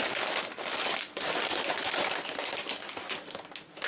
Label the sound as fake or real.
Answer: real